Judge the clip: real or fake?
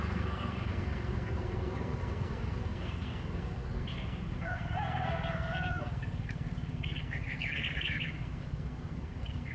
fake